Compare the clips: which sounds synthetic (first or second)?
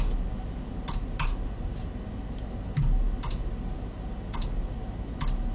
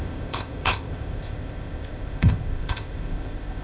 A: second